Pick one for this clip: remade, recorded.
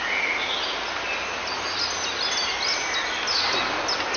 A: recorded